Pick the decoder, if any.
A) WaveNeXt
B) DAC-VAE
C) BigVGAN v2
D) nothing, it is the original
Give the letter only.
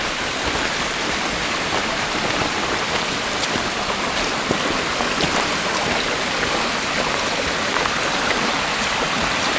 D